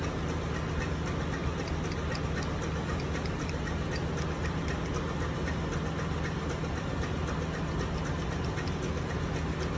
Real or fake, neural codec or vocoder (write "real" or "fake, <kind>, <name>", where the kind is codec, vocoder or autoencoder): real